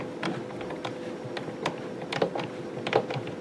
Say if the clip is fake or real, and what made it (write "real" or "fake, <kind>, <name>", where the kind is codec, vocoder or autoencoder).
real